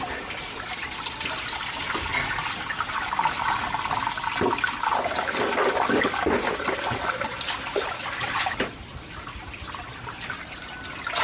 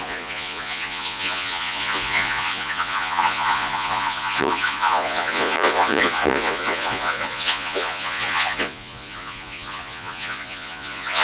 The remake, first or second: second